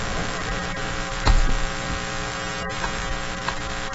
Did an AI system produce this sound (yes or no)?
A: no